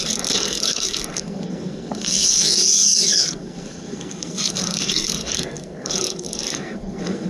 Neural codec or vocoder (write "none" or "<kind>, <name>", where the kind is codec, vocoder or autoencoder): codec, SNAC